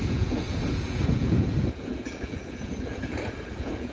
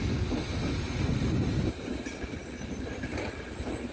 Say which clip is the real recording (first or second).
second